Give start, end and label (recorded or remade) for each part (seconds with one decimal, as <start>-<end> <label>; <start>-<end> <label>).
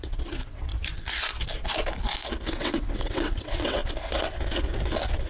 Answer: 0.0-0.7 remade; 0.7-2.5 recorded; 2.5-3.8 remade; 3.8-5.3 recorded